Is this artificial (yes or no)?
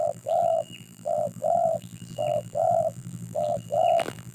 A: yes